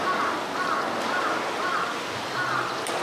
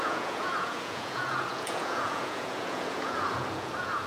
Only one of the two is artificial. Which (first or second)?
second